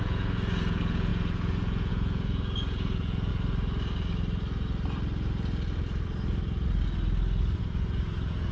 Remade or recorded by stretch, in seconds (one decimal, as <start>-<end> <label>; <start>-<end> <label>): 0.0-3.3 remade; 3.3-7.6 recorded; 7.6-8.5 remade